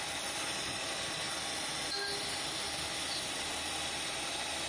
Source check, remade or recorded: recorded